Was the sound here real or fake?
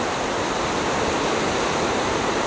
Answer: real